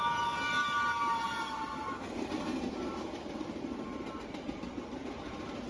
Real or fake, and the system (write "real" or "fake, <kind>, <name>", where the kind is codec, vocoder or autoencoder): real